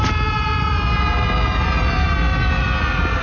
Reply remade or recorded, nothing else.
recorded